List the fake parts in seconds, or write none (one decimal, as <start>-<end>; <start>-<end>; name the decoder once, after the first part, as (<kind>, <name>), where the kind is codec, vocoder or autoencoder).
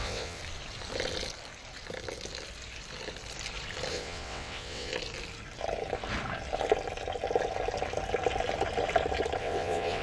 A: 0.0-0.4 (vocoder, WaveNeXt); 3.9-4.9; 9.4-10.0